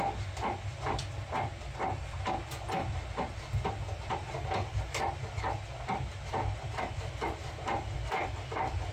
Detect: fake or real real